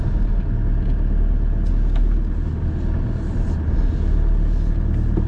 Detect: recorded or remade recorded